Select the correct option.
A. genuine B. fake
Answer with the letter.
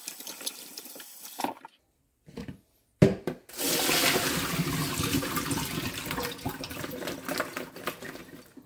A